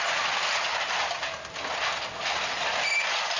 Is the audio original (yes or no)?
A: yes